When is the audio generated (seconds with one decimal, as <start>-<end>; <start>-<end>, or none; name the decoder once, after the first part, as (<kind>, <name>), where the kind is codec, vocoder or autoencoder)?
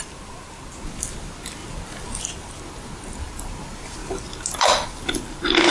none